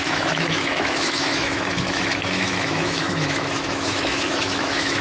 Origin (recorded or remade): remade